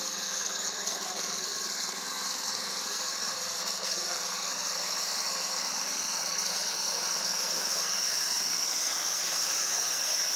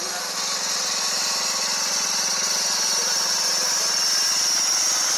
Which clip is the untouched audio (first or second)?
second